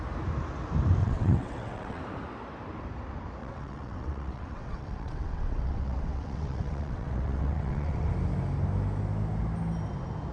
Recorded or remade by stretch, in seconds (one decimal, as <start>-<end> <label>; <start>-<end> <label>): 0.0-1.0 recorded; 1.0-2.0 remade; 2.0-3.4 recorded; 3.4-8.1 remade; 8.1-10.3 recorded